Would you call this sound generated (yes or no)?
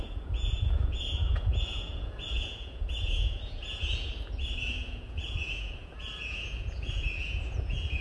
yes